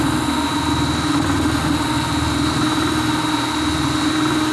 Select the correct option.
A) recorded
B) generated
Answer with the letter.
B